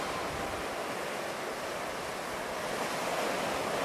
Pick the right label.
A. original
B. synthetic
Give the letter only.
A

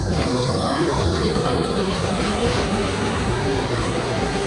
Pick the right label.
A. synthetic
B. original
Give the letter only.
A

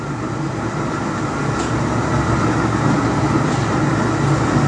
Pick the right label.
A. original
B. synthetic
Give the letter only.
B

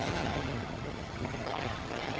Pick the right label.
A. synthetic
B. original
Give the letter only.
A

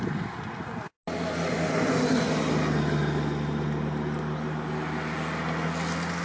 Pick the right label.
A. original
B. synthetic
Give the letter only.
A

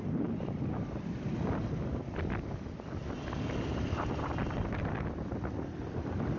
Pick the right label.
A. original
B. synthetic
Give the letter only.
B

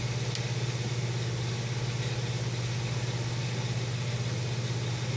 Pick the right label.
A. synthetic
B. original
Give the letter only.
B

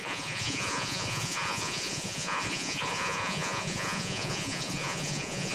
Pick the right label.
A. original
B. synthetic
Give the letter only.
B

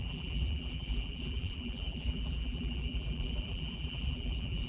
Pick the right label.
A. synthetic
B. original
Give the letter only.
A